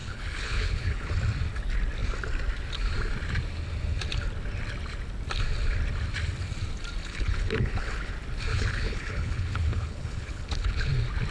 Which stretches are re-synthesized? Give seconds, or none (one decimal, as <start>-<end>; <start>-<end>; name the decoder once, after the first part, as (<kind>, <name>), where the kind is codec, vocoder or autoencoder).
0.0-1.1 (codec, HILCodec); 7.0-8.1; 8.5-10.9